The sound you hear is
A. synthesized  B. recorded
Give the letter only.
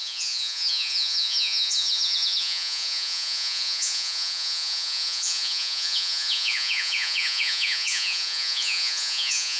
A